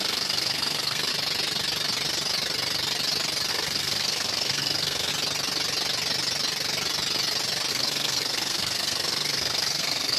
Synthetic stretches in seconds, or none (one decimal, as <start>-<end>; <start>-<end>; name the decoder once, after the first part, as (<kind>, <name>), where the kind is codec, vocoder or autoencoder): 0.0-1.1 (codec, SNAC); 3.5-5.1; 7.7-10.2